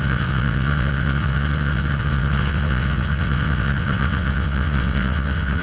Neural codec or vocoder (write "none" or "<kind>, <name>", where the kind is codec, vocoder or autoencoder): vocoder, WaveNeXt